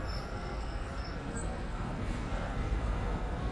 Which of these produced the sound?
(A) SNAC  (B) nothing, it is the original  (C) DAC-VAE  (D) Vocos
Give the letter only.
A